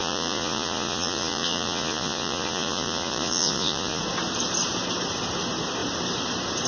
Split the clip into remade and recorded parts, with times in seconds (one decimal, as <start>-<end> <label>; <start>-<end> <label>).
0.0-4.0 remade; 4.0-6.7 recorded